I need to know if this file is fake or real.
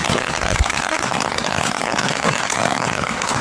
fake